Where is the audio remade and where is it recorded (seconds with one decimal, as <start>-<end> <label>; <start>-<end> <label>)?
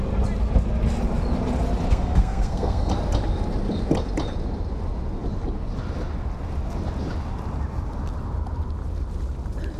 0.0-1.9 recorded; 1.9-2.9 remade; 2.9-9.8 recorded